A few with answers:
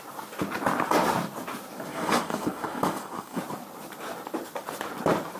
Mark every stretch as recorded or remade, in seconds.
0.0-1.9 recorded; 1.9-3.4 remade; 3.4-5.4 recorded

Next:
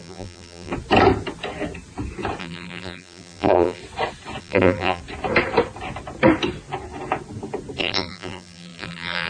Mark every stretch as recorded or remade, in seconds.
0.0-0.7 remade; 0.7-2.4 recorded; 2.4-3.8 remade; 3.8-4.4 recorded; 4.4-5.0 remade; 5.0-7.8 recorded; 7.8-9.3 remade